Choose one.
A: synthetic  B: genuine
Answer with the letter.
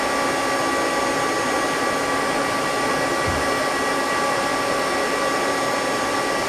B